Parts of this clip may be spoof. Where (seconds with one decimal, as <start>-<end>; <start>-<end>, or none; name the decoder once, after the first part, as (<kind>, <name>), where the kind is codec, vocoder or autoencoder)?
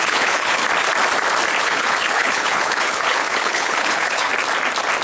0.0-0.6 (codec, HILCodec); 1.6-4.3